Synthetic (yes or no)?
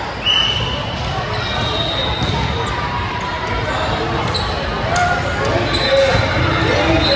no